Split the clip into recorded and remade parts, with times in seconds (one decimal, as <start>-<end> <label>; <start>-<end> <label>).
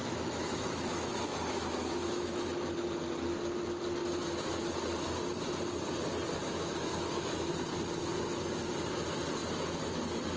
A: 0.0-2.7 remade; 2.7-6.4 recorded; 6.4-7.5 remade; 7.5-10.4 recorded